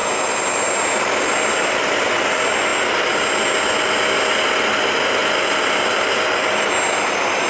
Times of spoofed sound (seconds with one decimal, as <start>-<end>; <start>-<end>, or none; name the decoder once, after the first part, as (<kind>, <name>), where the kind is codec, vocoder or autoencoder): none